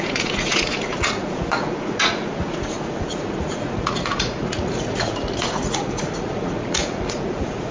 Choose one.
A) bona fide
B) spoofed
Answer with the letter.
B